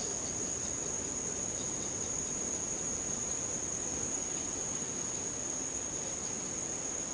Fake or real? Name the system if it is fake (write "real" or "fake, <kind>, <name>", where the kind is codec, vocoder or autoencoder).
real